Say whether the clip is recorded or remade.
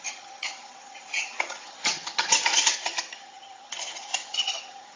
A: remade